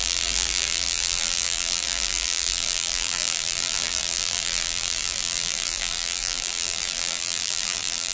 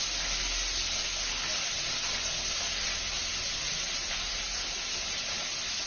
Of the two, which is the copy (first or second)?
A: first